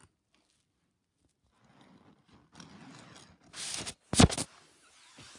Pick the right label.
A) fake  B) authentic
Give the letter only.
B